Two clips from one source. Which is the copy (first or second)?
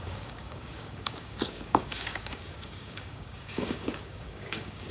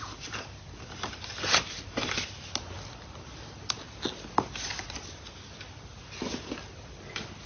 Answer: first